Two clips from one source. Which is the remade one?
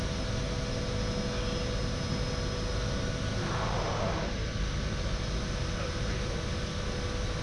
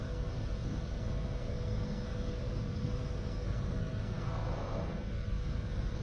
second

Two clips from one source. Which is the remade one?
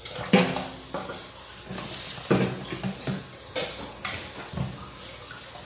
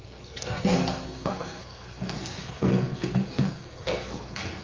second